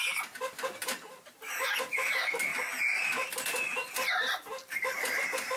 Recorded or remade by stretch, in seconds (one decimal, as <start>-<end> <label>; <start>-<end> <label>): 0.0-0.8 recorded; 0.8-2.1 remade; 2.1-5.6 recorded